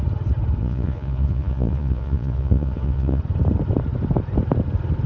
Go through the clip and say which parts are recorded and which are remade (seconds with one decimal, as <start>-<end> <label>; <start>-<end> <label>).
0.0-0.6 recorded; 0.6-3.2 remade; 3.2-5.1 recorded